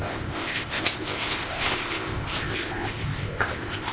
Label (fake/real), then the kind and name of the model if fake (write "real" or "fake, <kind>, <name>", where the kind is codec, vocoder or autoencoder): fake, codec, ZipCodec